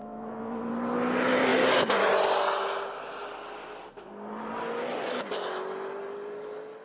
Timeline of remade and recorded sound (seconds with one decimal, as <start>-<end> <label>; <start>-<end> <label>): 0.0-0.7 remade; 0.7-6.8 recorded